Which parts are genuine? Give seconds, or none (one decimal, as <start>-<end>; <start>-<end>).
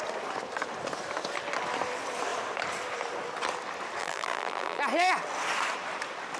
0.0-4.0; 4.8-6.4